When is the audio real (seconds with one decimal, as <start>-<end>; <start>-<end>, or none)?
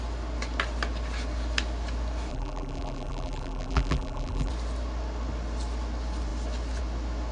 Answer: 0.0-2.3; 4.5-7.3